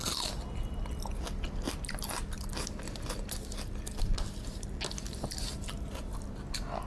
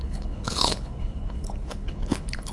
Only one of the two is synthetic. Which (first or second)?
second